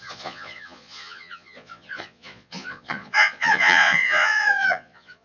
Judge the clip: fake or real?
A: fake